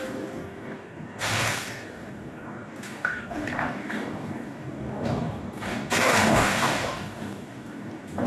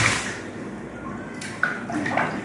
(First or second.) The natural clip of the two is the second